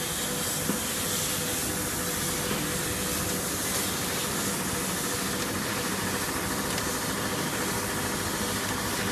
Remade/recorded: recorded